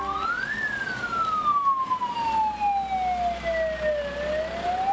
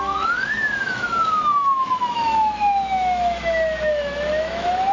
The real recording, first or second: first